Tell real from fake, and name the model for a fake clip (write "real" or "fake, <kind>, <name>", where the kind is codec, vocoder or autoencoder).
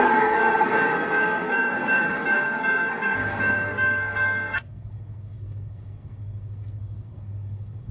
fake, codec, SNAC